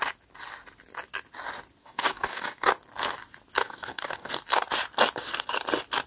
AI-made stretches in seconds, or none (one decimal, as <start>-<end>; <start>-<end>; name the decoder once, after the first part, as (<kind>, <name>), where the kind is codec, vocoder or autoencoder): 1.8-2.7 (codec, DAC); 3.6-4.3